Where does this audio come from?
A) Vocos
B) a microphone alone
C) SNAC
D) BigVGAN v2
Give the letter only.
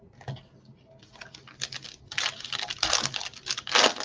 B